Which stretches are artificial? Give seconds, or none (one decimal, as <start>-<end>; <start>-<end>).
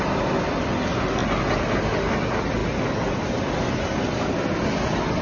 none